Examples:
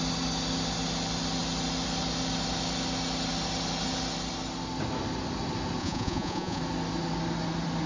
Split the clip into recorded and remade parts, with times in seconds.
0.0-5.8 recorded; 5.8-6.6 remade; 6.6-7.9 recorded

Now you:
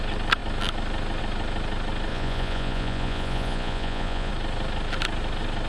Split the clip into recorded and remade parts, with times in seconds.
0.0-2.1 recorded; 2.1-4.3 remade; 4.3-5.7 recorded